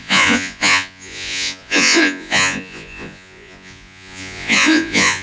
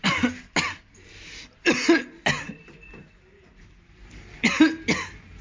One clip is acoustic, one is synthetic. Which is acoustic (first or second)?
second